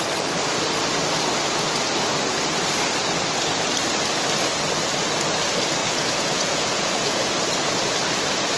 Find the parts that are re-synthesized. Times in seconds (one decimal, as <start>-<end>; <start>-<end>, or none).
5.8-7.3